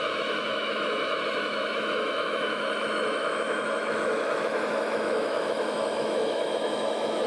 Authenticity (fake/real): fake